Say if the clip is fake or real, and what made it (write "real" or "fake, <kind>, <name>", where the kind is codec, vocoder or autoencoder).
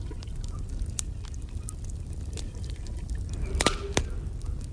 real